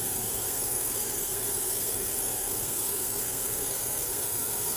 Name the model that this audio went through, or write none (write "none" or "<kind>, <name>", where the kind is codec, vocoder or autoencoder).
codec, SNAC